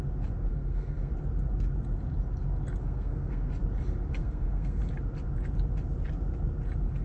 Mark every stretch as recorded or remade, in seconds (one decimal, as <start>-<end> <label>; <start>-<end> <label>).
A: 0.0-0.5 recorded; 0.5-1.1 remade; 1.1-2.8 recorded; 2.8-3.5 remade; 3.5-4.2 recorded; 4.2-4.8 remade; 4.8-7.0 recorded